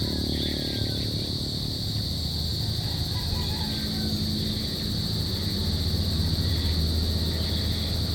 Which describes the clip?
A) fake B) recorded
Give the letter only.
B